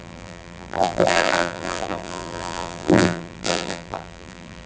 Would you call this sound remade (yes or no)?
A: yes